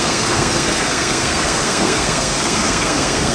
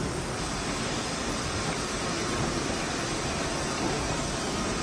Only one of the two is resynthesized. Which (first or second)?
first